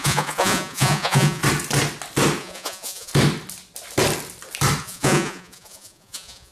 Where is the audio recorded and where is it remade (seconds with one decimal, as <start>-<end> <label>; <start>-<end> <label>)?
0.0-1.4 remade; 1.4-2.4 recorded; 2.4-3.1 remade; 3.1-4.8 recorded; 4.8-6.5 remade